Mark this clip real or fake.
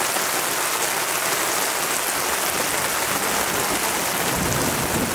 real